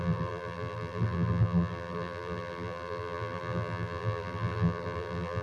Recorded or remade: remade